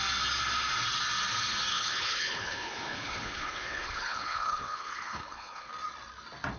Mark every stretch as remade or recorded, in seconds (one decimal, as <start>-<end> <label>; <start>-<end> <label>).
0.0-1.7 recorded; 1.7-5.7 remade; 5.7-6.6 recorded